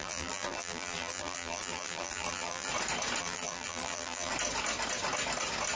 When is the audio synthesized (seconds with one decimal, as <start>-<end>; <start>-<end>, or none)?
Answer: 0.0-2.7; 3.2-4.3